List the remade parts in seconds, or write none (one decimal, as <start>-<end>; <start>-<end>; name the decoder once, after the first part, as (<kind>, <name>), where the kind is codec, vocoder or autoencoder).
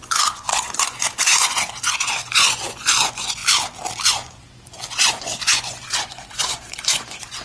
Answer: 0.0-3.4 (vocoder, Vocos); 4.1-7.4